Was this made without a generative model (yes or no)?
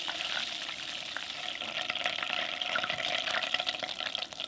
yes